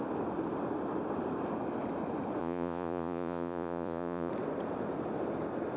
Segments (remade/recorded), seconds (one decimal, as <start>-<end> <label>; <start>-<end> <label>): 0.0-2.4 recorded; 2.4-4.3 remade; 4.3-5.8 recorded